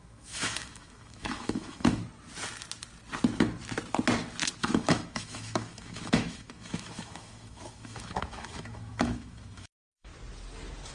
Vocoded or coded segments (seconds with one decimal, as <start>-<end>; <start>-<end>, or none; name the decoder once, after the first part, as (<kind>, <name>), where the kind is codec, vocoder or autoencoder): 0.0-2.0 (autoencoder, DAC-VAE); 4.6-10.1